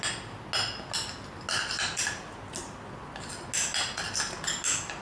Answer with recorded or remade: recorded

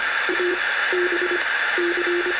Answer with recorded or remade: remade